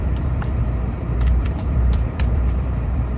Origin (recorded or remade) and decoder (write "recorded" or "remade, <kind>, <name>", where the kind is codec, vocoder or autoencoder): remade, vocoder, BigVGAN v2